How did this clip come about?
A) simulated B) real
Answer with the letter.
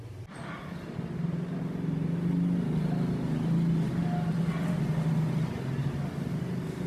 B